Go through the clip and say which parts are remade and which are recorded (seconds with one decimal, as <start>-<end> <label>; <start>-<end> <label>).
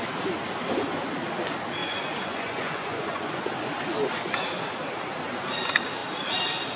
0.0-1.8 recorded; 1.8-3.4 remade; 3.4-6.8 recorded